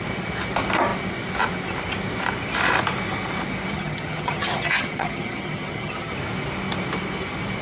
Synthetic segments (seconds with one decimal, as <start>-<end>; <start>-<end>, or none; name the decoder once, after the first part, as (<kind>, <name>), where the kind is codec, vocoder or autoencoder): 3.7-6.1 (vocoder, HiFi-GAN)